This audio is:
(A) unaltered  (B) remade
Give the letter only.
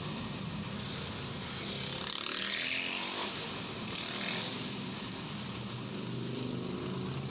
A